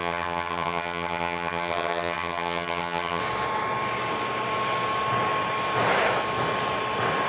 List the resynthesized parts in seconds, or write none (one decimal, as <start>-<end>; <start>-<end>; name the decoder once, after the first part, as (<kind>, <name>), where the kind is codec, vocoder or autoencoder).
0.0-3.2 (vocoder, HiFi-GAN)

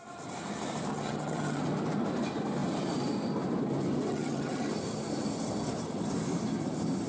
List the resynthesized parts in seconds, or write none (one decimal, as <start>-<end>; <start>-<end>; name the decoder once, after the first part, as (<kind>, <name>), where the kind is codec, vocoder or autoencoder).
0.9-1.6 (vocoder, HiFi-GAN); 4.1-4.7

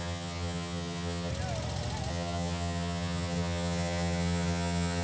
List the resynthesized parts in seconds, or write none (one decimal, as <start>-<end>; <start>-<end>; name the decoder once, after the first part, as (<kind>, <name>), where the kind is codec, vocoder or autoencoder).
0.0-1.3 (vocoder, HiFi-GAN); 2.1-5.0

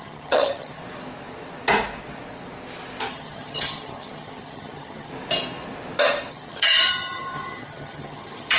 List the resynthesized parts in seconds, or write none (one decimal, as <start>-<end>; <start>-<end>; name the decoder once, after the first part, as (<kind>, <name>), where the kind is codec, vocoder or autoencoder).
0.0-0.8 (vocoder, HiFi-GAN); 3.1-5.1; 6.3-8.6

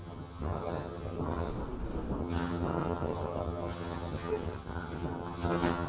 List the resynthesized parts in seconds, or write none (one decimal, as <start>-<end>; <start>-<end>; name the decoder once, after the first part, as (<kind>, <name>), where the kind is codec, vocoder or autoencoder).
0.0-1.5 (vocoder, HiFi-GAN); 2.2-5.9

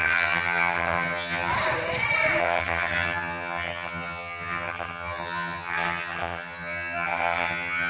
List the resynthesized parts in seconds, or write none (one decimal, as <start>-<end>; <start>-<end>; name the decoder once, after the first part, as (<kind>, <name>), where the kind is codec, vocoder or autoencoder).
0.0-1.5 (vocoder, HiFi-GAN); 2.4-7.9